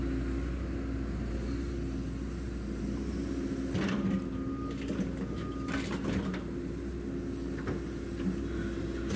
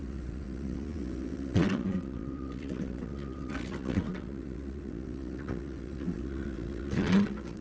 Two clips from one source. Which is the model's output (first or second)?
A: second